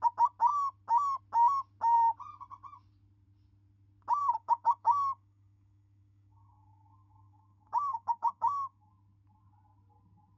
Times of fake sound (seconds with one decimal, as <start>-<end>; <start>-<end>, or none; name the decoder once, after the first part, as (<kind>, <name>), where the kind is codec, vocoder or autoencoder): 4.2-8.9 (codec, DAC)